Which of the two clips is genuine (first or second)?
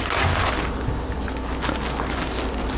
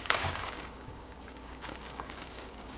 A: first